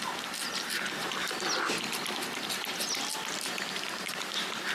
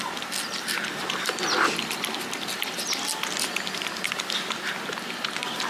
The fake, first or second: first